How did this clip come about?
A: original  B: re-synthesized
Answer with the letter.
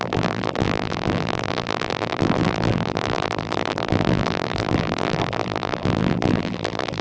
B